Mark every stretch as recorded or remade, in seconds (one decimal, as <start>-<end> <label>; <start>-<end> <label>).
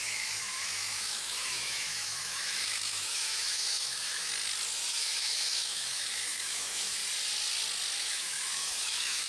0.0-4.3 remade; 4.3-4.9 recorded; 4.9-7.0 remade; 7.0-8.0 recorded; 8.0-9.3 remade